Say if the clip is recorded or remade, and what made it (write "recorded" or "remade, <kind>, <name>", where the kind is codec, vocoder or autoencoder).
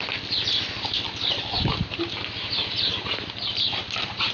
recorded